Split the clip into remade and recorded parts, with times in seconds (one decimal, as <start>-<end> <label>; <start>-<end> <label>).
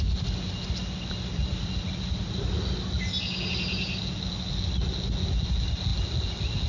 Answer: 0.0-6.7 recorded